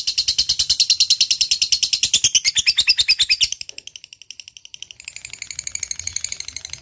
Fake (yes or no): no